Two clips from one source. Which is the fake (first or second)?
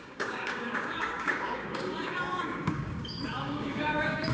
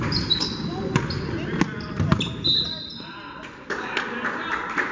first